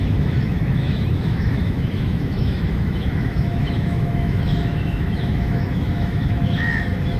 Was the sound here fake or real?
fake